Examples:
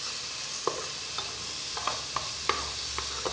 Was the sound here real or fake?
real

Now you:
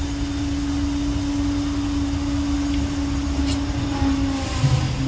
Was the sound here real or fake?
real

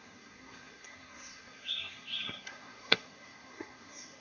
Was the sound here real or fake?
fake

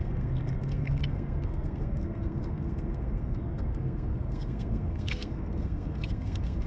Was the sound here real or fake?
fake